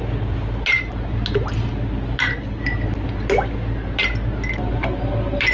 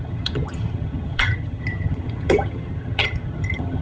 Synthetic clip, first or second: second